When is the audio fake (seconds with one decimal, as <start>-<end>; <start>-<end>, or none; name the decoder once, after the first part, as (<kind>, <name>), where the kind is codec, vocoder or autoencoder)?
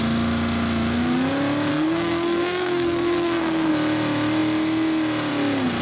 1.7-3.7 (codec, SNAC)